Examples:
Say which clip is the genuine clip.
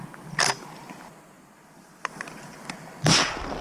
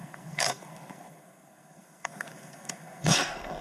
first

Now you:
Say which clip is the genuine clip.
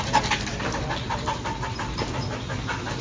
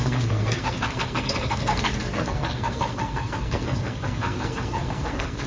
first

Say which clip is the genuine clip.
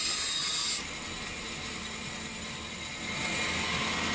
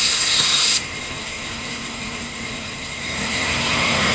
first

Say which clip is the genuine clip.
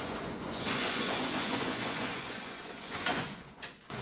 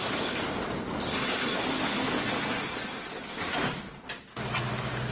second